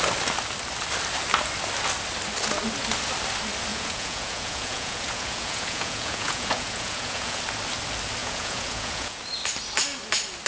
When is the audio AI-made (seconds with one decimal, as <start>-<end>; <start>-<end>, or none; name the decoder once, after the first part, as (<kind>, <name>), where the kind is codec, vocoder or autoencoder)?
3.7-7.4 (vocoder, Vocos); 8.2-9.2